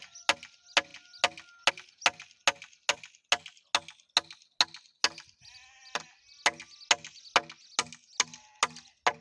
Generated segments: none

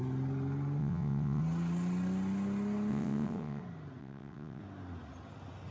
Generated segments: 0.8-1.4 (vocoder, WaveNeXt); 2.9-3.6; 4.0-4.6

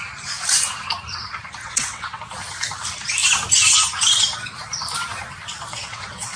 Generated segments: 1.6-2.2 (vocoder, WaveNeXt); 5.7-6.4